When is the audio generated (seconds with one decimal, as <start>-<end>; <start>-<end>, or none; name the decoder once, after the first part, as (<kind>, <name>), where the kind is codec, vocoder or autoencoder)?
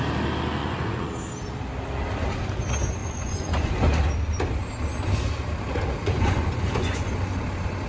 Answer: 0.6-1.1 (vocoder, Vocos); 3.0-3.7; 6.0-7.1